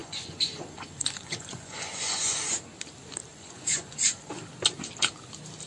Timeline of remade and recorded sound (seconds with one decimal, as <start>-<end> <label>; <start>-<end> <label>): 0.0-2.4 remade; 2.4-3.3 recorded; 3.3-4.3 remade; 4.3-5.7 recorded